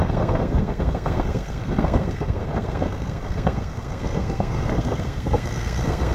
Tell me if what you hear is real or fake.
fake